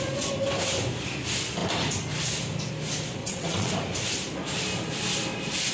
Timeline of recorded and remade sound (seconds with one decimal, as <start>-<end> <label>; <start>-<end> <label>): 0.0-3.2 recorded; 3.2-3.7 remade; 3.7-5.7 recorded